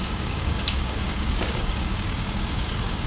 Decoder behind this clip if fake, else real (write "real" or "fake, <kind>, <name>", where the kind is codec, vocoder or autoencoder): fake, codec, DAC